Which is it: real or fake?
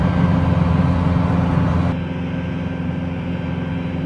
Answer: real